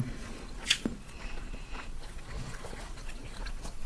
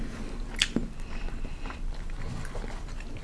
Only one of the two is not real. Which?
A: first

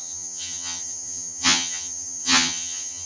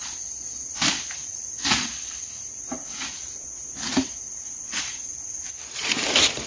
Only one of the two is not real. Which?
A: first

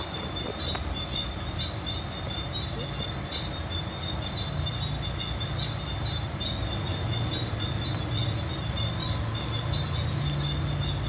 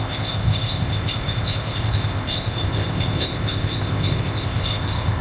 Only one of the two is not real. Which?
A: second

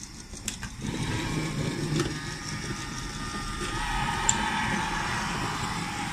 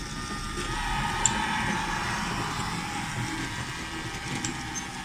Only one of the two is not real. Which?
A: first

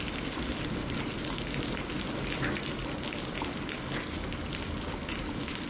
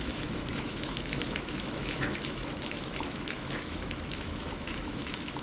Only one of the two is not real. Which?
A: second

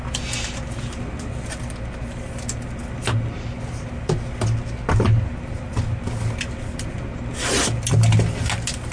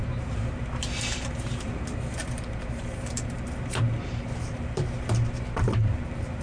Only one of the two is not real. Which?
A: second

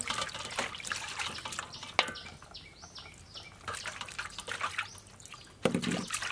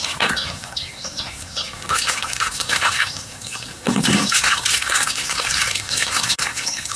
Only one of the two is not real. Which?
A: second